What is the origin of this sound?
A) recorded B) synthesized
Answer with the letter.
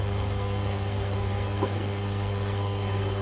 B